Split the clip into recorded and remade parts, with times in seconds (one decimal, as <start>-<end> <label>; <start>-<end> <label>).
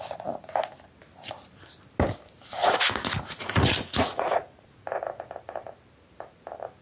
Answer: 0.0-2.6 recorded; 2.6-5.0 remade; 5.0-6.8 recorded